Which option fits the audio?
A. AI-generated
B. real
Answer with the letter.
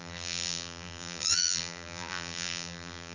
A